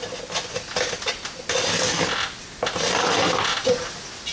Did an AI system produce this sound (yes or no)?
no